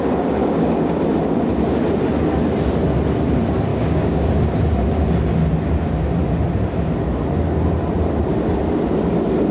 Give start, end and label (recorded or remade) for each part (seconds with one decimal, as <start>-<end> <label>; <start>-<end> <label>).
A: 0.0-0.4 recorded; 0.4-1.0 remade; 1.0-3.7 recorded; 3.7-4.3 remade; 4.3-9.5 recorded